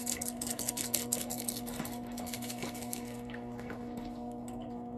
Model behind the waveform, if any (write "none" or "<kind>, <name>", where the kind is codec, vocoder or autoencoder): codec, SNAC